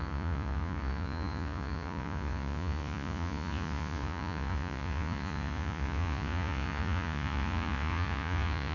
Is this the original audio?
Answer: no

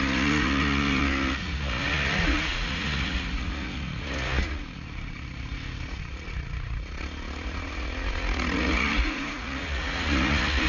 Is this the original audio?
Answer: no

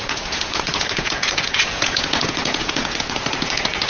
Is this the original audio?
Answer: no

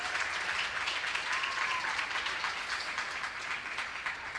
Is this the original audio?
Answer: yes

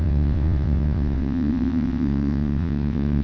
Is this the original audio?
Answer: no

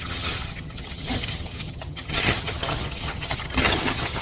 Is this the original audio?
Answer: no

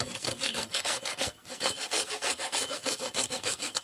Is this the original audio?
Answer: no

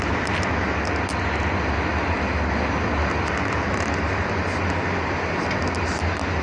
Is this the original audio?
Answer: yes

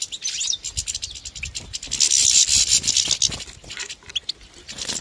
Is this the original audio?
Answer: yes